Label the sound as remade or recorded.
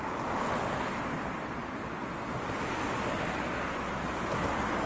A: recorded